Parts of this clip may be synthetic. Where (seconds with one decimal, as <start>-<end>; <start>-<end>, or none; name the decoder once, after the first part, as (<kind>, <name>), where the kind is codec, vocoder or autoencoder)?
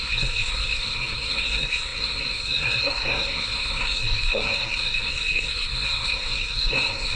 0.0-7.2 (codec, SNAC)